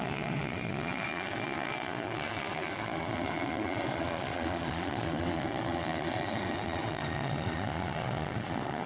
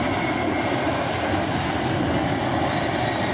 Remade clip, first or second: first